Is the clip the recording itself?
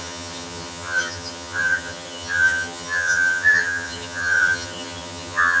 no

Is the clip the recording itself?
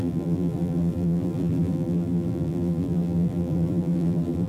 no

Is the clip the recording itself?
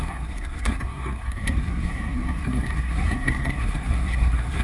no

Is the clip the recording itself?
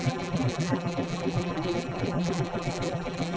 no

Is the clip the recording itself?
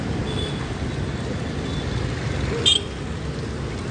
yes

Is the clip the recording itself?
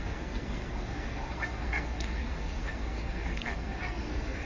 no